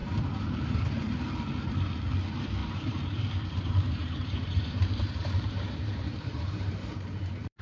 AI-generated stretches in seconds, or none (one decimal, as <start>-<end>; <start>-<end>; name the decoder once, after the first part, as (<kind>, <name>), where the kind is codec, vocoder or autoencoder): 0.0-0.8 (vocoder, BigVGAN v2); 2.6-7.6